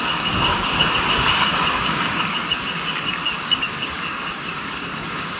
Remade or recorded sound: remade